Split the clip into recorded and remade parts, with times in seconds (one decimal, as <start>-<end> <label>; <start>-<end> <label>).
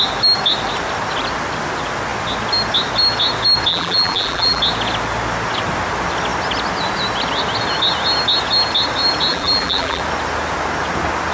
0.0-3.7 recorded; 3.7-4.6 remade; 4.6-9.3 recorded; 9.3-10.0 remade; 10.0-11.3 recorded